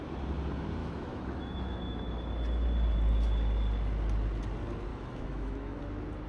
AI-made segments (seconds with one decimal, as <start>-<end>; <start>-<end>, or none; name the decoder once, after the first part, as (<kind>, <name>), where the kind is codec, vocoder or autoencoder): 0.8-2.1 (autoencoder, DAC-VAE); 4.9-5.8